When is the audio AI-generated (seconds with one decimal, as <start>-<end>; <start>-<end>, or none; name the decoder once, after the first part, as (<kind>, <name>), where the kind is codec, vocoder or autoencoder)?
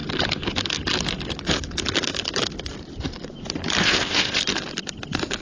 3.8-4.4 (codec, ZipCodec)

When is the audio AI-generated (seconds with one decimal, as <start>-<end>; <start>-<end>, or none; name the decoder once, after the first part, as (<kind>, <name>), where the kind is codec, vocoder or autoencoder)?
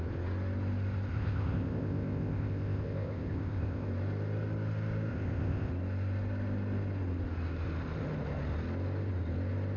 1.1-3.9 (codec, ZipCodec); 5.1-5.7